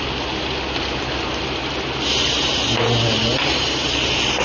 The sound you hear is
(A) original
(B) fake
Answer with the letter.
A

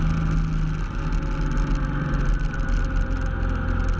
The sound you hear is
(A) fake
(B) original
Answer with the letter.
B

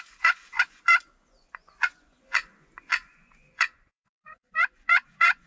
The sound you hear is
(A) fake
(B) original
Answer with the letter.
A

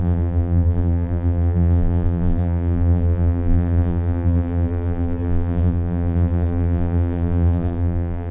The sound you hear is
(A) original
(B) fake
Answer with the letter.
B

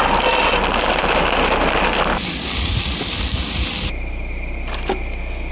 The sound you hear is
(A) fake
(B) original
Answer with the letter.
B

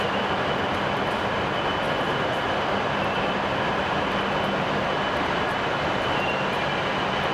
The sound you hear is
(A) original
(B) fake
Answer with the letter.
A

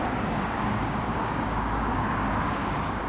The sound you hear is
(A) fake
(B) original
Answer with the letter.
A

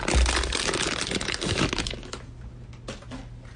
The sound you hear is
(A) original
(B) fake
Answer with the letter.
A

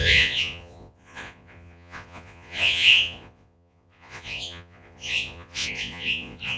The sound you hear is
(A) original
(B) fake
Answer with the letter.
B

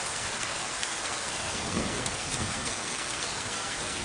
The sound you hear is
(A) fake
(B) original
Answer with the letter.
A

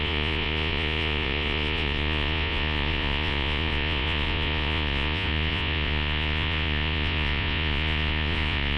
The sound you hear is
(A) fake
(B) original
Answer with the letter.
A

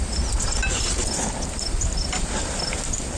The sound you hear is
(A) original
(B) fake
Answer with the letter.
A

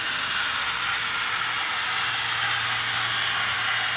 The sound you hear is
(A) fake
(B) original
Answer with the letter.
B